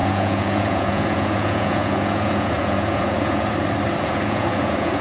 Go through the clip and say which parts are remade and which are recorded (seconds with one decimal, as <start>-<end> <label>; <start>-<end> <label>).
0.0-3.5 remade; 3.5-4.0 recorded; 4.0-5.0 remade